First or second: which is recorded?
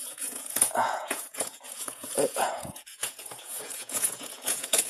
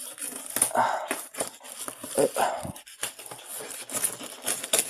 second